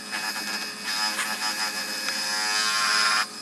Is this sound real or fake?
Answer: real